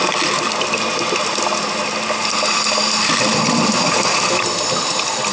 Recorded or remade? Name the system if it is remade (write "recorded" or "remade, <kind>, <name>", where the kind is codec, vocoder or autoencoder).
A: recorded